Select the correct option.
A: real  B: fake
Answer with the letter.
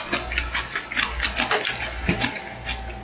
A